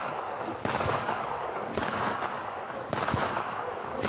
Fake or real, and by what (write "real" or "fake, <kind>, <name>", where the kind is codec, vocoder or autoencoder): fake, codec, DAC